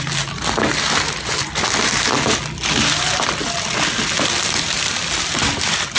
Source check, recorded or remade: recorded